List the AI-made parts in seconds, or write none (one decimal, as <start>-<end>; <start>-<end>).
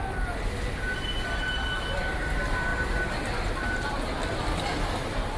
none